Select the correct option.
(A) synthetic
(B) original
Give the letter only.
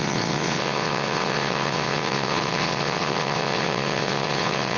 A